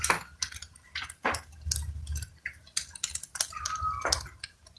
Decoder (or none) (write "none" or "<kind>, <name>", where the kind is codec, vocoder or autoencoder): none